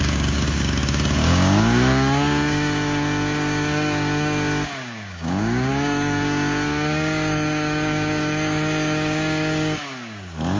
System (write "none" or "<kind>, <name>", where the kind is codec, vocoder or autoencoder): codec, DAC